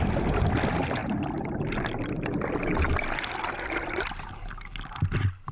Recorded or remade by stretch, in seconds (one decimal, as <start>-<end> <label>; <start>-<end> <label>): 0.0-5.5 recorded